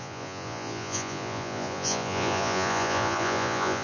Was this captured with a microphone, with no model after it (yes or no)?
no